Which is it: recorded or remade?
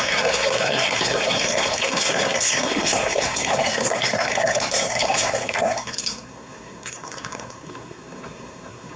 remade